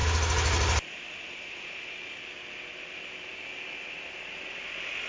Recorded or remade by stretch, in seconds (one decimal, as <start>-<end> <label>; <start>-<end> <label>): 0.0-5.1 recorded